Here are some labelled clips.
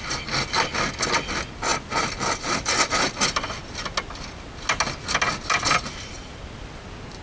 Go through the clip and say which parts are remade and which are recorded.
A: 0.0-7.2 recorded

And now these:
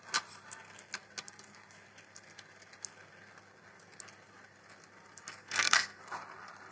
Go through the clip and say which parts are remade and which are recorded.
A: 0.0-5.4 recorded; 5.4-6.0 remade; 6.0-6.7 recorded

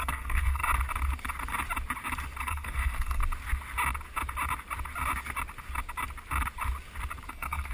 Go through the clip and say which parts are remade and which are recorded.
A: 0.0-0.6 remade; 0.6-2.4 recorded; 2.4-3.2 remade; 3.2-7.3 recorded; 7.3-7.7 remade

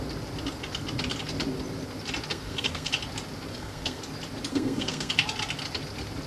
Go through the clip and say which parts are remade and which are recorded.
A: 0.0-2.3 recorded; 2.3-2.9 remade; 2.9-3.5 recorded; 3.5-4.0 remade; 4.0-4.5 recorded; 4.5-5.1 remade; 5.1-6.3 recorded

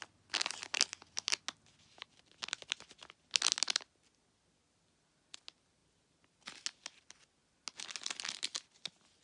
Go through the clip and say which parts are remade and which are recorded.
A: 0.0-9.2 recorded

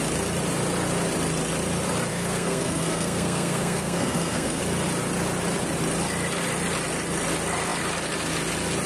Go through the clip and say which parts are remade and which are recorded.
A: 0.0-2.1 recorded; 2.1-4.6 remade; 4.6-8.9 recorded